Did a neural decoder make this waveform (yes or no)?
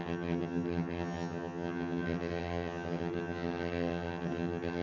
yes